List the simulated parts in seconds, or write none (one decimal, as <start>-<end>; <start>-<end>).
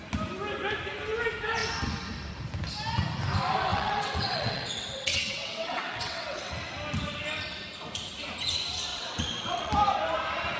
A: 3.7-6.6; 8.9-9.7